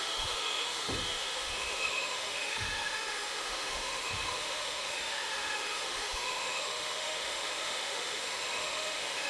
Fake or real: fake